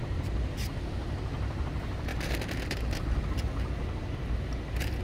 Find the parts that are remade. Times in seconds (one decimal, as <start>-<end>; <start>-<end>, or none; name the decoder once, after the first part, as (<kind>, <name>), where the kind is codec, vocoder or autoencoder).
0.0-2.1 (vocoder, BigVGAN v2); 4.3-5.0